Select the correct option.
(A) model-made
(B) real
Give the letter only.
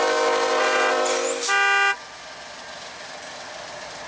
B